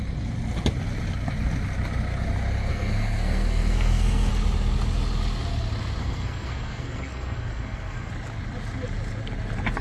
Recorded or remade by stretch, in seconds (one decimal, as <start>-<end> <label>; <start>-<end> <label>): 0.0-2.7 recorded; 2.7-4.3 remade; 4.3-6.0 recorded; 6.0-8.1 remade; 8.1-9.8 recorded